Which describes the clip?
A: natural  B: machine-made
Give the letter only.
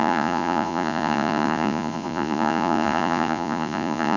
B